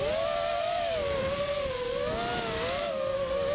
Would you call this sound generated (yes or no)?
no